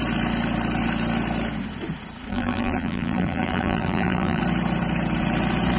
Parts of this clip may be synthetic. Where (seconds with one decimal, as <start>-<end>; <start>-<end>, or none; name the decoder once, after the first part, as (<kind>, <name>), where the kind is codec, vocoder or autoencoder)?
2.3-4.4 (vocoder, BigVGAN v2)